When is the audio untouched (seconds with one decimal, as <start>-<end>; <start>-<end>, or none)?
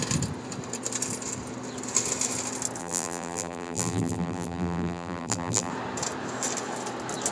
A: 0.0-2.8; 5.7-7.3